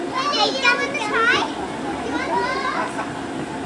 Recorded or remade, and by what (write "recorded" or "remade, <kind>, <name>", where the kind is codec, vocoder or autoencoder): recorded